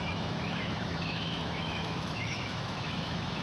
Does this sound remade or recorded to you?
remade